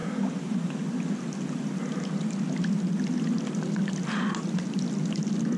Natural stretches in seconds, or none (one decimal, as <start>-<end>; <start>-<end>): 0.0-5.6